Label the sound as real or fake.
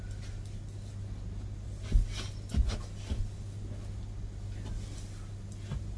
real